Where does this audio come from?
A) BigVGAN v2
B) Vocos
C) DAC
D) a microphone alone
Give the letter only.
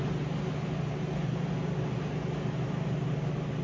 D